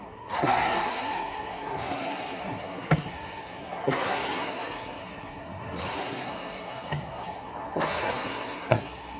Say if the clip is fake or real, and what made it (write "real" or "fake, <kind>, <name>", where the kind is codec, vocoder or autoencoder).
fake, codec, SNAC